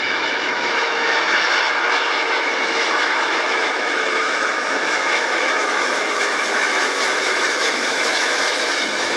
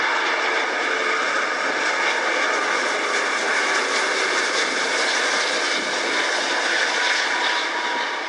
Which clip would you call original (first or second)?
second